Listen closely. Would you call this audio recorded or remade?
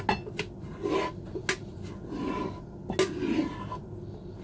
recorded